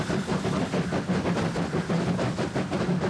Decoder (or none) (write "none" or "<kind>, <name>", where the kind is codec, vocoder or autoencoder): none